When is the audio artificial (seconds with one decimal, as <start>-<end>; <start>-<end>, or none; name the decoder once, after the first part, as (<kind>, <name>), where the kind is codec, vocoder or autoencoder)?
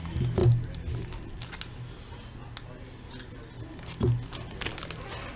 none